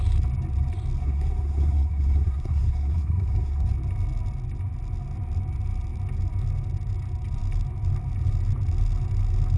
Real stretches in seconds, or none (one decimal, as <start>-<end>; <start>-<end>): 0.0-1.0; 3.7-9.6